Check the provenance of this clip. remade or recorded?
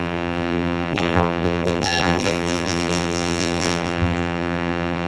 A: remade